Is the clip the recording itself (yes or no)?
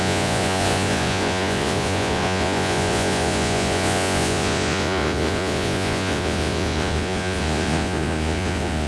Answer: no